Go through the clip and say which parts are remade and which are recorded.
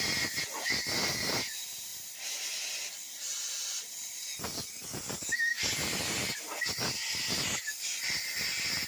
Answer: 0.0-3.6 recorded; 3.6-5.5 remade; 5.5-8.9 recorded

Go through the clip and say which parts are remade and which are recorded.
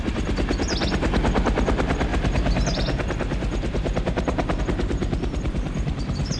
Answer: 0.0-2.1 recorded; 2.1-4.6 remade; 4.6-5.0 recorded; 5.0-6.4 remade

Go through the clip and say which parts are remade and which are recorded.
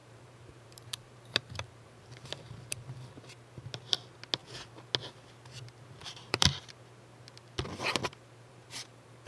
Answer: 0.0-3.0 remade; 3.0-6.0 recorded; 6.0-6.7 remade; 6.7-8.0 recorded; 8.0-9.3 remade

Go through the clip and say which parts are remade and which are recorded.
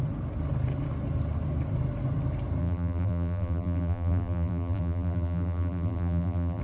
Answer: 0.0-2.6 recorded; 2.6-6.6 remade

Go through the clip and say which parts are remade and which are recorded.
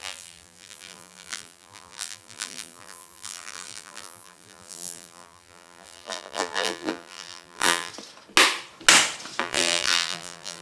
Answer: 0.0-7.9 remade; 7.9-9.4 recorded; 9.4-10.6 remade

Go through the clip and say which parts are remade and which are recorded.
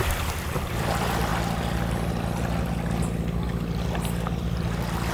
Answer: 0.0-1.3 remade; 1.3-4.4 recorded; 4.4-5.1 remade